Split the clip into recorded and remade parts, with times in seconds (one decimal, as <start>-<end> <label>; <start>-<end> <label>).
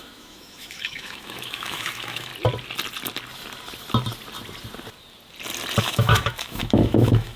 0.0-2.3 remade; 2.3-5.8 recorded; 5.8-7.4 remade